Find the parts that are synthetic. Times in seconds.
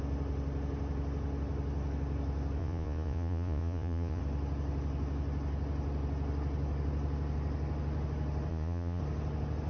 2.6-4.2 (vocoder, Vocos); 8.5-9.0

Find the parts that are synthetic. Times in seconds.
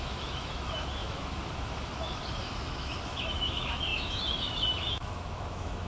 0.0-5.9 (autoencoder, DAC-VAE)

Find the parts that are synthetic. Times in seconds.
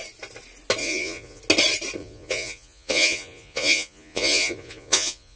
0.8-1.4 (vocoder, Vocos); 2.0-5.4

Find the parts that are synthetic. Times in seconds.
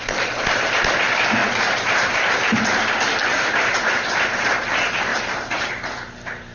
1.4-2.6 (vocoder, BigVGAN v2); 3.3-4.6; 5.1-5.7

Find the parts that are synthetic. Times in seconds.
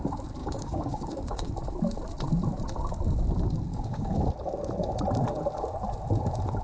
0.4-1.5 (codec, DAC); 3.7-4.3